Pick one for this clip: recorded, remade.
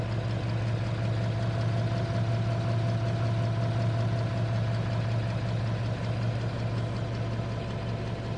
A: recorded